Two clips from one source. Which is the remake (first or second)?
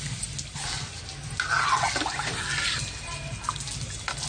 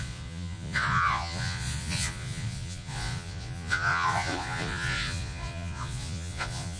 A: second